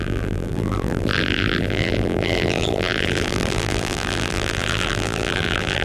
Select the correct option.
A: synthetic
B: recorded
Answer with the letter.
A